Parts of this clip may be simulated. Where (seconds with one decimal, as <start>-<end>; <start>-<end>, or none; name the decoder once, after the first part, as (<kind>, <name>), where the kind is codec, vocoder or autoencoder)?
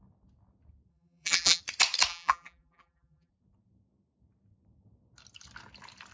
0.9-1.6 (vocoder, BigVGAN v2); 2.1-3.3